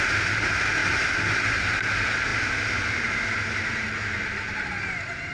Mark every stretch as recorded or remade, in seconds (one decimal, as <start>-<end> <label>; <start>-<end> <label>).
0.0-5.3 recorded